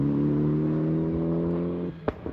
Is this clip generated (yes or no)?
no